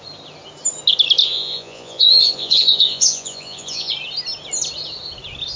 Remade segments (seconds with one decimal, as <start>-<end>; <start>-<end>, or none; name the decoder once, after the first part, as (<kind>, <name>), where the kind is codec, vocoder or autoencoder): 1.2-3.9 (vocoder, Vocos)